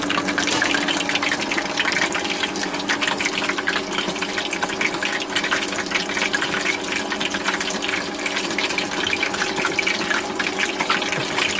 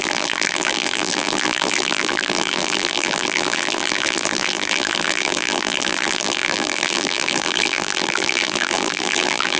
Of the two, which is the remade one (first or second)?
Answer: second